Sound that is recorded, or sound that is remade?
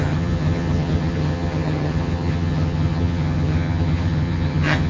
remade